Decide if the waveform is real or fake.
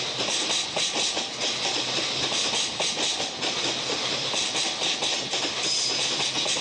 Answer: real